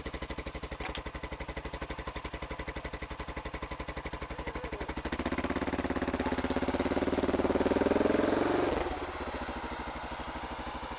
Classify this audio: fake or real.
real